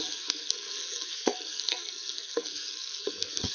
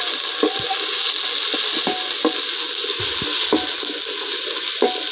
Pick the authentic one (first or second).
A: second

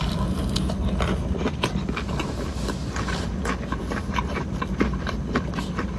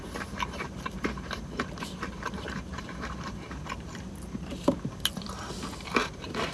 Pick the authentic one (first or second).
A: first